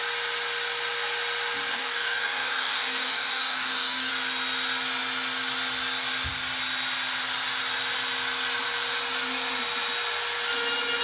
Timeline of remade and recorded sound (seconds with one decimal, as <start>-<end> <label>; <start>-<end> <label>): 0.0-1.7 recorded; 1.7-4.1 remade; 4.1-11.0 recorded

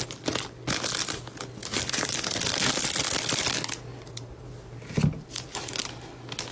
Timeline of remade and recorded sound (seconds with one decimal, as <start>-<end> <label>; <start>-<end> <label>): 0.0-1.6 recorded; 1.6-2.5 remade; 2.5-3.9 recorded; 3.9-5.7 remade; 5.7-6.5 recorded

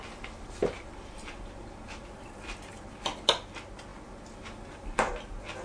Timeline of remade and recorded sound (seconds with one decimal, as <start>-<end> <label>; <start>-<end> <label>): 0.0-3.9 recorded; 3.9-5.1 remade; 5.1-5.6 recorded